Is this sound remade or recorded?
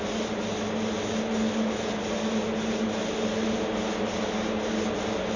recorded